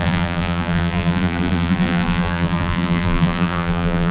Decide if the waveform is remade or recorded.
remade